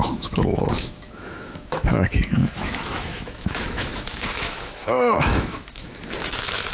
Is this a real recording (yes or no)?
no